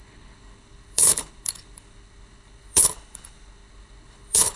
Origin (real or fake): fake